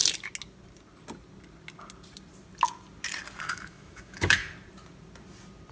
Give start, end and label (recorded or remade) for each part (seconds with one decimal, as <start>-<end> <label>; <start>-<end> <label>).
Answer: 0.0-3.4 recorded; 3.4-4.4 remade; 4.4-5.7 recorded